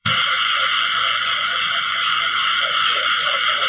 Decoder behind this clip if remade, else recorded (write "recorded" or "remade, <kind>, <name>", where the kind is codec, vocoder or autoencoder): remade, vocoder, Vocos